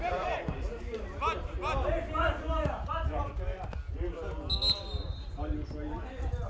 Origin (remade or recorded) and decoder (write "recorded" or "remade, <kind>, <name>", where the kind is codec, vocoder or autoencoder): recorded